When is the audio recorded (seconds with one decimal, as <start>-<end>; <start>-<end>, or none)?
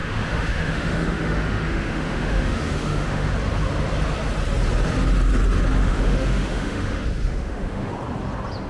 3.3-5.8; 7.9-8.7